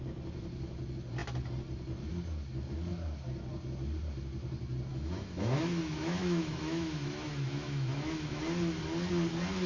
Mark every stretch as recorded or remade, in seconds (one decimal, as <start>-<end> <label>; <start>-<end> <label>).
0.0-4.9 recorded; 4.9-8.4 remade; 8.4-9.7 recorded